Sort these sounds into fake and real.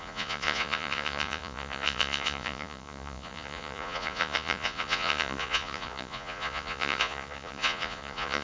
fake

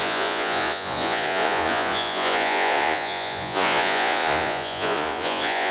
fake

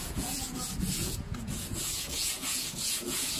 fake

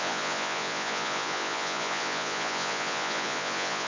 fake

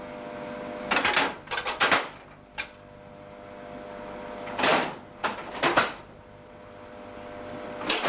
real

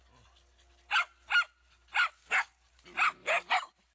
real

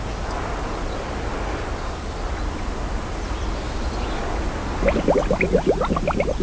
real